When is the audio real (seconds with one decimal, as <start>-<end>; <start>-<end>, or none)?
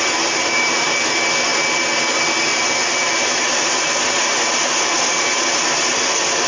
0.0-6.5